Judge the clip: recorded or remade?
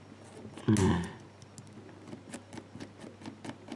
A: recorded